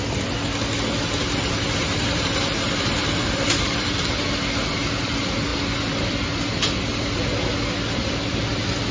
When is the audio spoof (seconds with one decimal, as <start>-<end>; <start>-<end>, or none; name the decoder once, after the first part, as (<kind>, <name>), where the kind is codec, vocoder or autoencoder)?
1.2-3.9 (vocoder, BigVGAN v2)